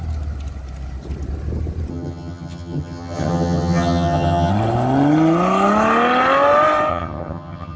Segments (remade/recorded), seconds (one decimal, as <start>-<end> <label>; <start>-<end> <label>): 0.0-1.9 recorded; 1.9-4.5 remade; 4.5-6.9 recorded; 6.9-7.8 remade